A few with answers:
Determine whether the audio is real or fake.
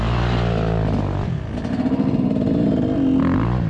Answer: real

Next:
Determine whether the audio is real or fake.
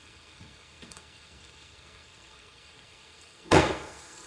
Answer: fake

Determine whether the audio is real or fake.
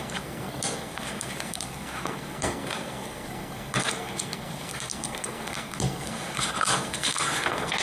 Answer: fake